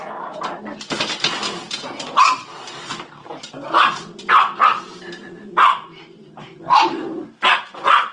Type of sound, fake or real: real